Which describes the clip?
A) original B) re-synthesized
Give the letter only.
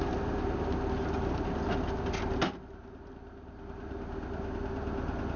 A